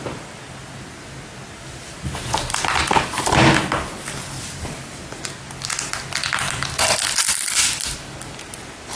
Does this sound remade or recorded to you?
recorded